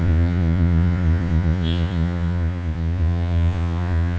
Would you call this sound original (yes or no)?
no